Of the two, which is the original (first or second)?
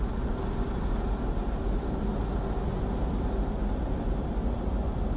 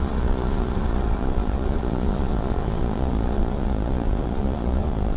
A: first